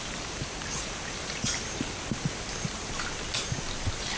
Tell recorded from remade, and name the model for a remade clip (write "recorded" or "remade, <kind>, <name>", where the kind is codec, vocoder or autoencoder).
recorded